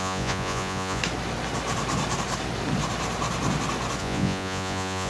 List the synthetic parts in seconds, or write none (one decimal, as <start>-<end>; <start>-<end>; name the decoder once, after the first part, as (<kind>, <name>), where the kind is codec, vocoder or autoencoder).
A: 0.0-1.0 (vocoder, Vocos); 4.0-5.1